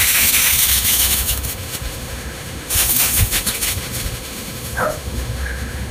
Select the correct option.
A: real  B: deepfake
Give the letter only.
B